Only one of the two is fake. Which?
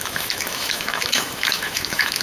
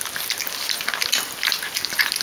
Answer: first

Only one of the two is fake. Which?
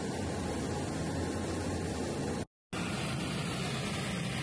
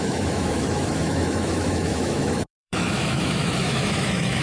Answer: second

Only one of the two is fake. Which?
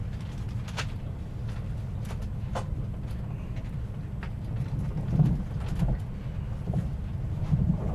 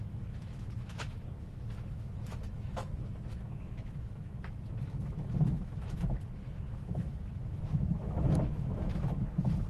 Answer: second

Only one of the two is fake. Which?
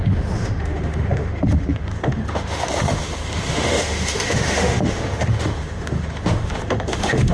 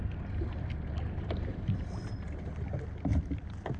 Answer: first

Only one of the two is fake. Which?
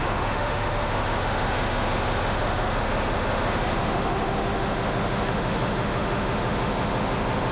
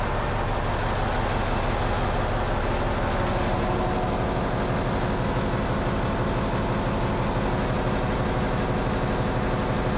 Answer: first